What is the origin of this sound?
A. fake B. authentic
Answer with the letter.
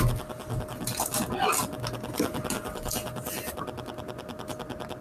B